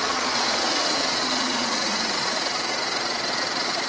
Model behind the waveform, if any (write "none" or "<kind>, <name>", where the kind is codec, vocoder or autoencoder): vocoder, Vocos